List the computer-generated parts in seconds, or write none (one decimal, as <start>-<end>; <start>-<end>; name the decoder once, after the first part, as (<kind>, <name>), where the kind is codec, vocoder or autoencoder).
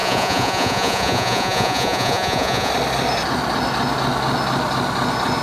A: 0.0-2.7 (vocoder, Vocos)